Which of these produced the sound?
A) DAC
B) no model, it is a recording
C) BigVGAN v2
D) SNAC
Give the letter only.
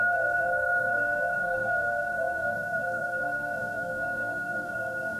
D